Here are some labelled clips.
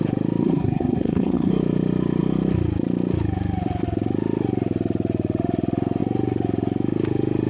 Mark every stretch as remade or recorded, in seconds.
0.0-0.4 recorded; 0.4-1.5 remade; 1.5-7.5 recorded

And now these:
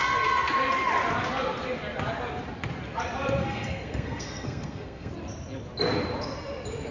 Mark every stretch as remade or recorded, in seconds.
0.0-3.4 recorded; 3.4-5.1 remade; 5.1-6.9 recorded

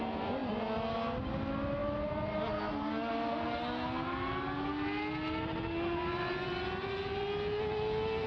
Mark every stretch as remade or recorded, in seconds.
0.0-8.3 recorded

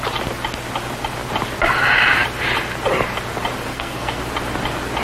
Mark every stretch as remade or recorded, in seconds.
0.0-3.7 recorded; 3.7-4.2 remade; 4.2-5.0 recorded